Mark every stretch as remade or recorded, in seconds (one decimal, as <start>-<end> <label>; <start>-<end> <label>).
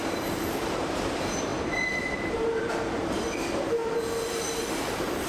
0.0-0.7 recorded; 0.7-3.8 remade; 3.8-4.6 recorded; 4.6-5.3 remade